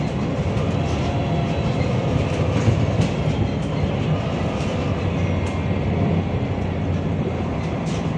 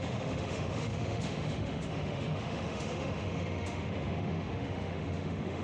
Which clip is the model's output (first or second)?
second